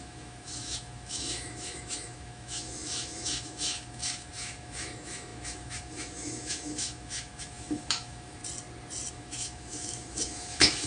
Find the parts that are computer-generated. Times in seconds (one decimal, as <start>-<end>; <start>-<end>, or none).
0.0-8.4; 9.1-10.9